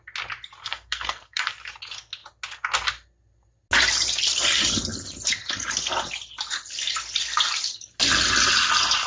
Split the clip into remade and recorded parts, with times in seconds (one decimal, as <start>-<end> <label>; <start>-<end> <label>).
0.0-0.6 recorded; 0.6-1.5 remade; 1.5-9.1 recorded